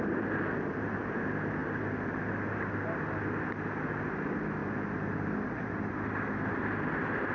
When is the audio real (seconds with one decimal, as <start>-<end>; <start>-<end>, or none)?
0.0-7.3